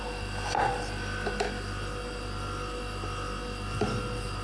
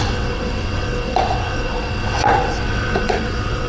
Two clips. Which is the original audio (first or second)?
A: first